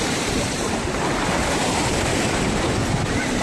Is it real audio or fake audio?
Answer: fake